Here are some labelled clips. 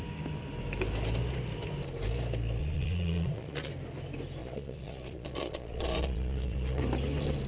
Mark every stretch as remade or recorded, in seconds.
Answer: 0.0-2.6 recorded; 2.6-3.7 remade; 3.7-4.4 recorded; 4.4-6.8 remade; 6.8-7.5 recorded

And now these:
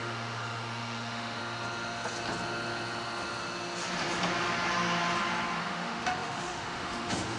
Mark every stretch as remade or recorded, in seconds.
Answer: 0.0-1.4 remade; 1.4-5.6 recorded; 5.6-7.4 remade

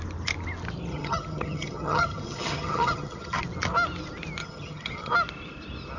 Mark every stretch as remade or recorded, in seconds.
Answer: 0.0-0.9 recorded; 0.9-3.4 remade; 3.4-4.4 recorded; 4.4-5.1 remade; 5.1-6.0 recorded

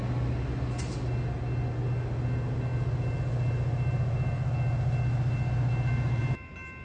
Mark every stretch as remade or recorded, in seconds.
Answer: 0.0-6.8 recorded

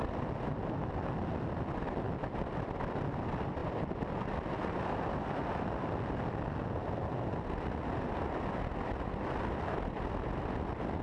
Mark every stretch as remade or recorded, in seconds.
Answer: 0.0-11.0 recorded

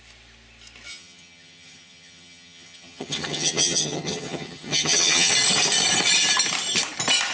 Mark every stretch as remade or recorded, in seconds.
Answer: 0.0-0.9 recorded; 0.9-5.3 remade; 5.3-7.3 recorded

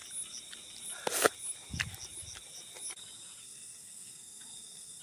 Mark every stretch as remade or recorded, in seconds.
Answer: 0.0-3.4 recorded; 3.4-5.0 remade

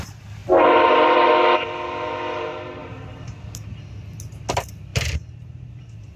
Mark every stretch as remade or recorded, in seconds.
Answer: 0.0-0.4 recorded; 0.4-1.3 remade; 1.3-2.8 recorded; 2.8-3.3 remade; 3.3-4.9 recorded; 4.9-5.7 remade; 5.7-6.2 recorded